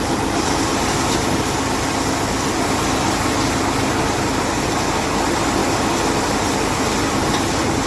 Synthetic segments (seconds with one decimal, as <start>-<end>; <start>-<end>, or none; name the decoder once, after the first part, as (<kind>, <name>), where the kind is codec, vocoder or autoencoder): none